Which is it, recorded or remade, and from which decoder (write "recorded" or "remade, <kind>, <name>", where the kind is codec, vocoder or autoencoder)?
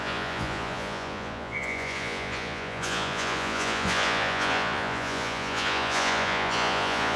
remade, vocoder, Vocos